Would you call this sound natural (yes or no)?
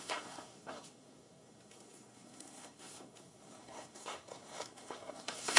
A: no